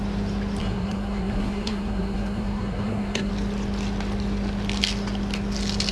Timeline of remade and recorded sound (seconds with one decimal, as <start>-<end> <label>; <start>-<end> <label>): 0.0-0.6 recorded; 0.6-3.3 remade; 3.3-5.9 recorded